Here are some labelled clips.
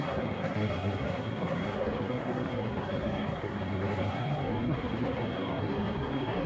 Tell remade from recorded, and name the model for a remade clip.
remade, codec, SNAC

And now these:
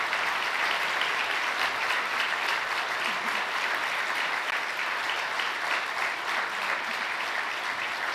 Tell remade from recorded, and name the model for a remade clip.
recorded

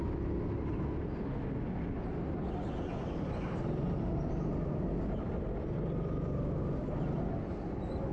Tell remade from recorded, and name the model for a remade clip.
recorded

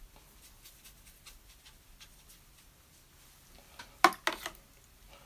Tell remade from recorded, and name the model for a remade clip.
recorded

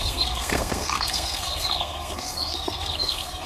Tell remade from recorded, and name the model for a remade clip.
remade, codec, SNAC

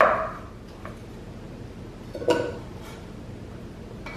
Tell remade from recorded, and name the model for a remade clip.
remade, vocoder, BigVGAN v2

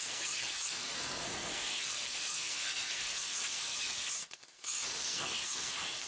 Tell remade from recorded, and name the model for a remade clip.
remade, codec, SNAC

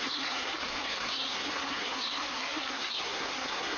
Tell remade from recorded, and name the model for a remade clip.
remade, codec, SNAC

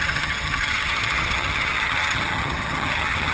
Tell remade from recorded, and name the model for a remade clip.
remade, vocoder, HiFi-GAN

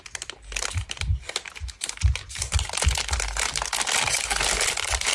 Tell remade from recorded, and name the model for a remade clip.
recorded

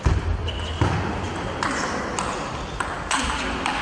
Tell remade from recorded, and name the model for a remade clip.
recorded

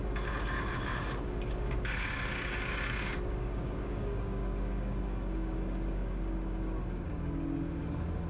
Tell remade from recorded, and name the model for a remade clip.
remade, codec, DAC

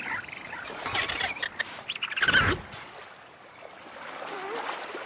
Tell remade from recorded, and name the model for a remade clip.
remade, vocoder, BigVGAN v2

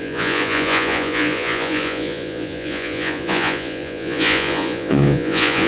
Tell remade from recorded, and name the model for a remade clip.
remade, vocoder, Vocos